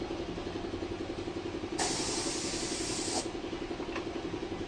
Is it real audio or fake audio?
real